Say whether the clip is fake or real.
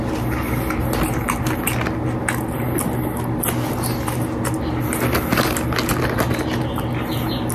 real